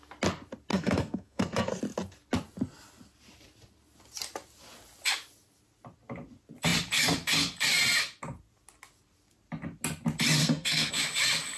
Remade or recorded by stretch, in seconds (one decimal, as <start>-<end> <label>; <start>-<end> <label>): 0.0-0.7 recorded; 0.7-1.7 remade; 1.7-10.4 recorded; 10.4-10.9 remade; 10.9-11.6 recorded